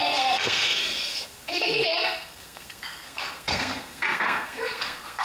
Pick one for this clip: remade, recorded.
remade